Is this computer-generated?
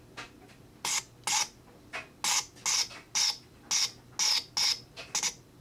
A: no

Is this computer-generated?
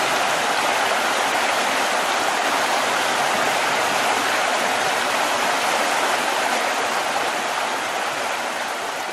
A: no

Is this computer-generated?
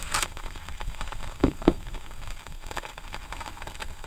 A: yes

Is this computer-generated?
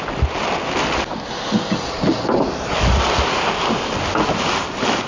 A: no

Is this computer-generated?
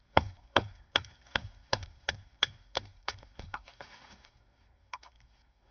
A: yes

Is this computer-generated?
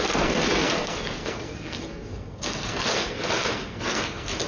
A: yes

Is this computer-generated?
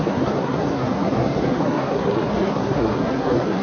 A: yes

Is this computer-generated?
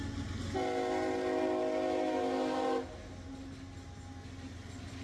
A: no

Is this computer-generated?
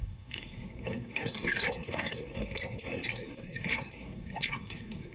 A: yes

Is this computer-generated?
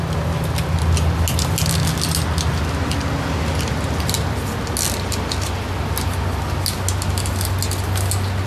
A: no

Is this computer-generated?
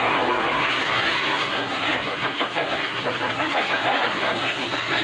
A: yes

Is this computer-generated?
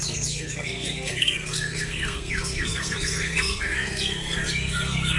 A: yes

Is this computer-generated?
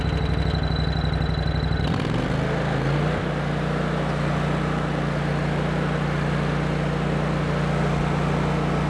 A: no